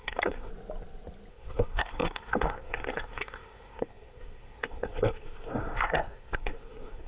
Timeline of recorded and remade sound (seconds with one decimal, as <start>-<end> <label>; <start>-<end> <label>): 0.0-0.5 remade; 0.5-1.3 recorded; 1.3-7.1 remade